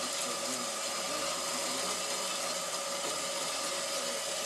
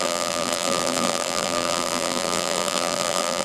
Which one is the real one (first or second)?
first